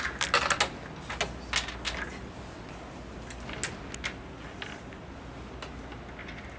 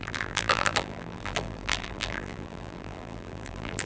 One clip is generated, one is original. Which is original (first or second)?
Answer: first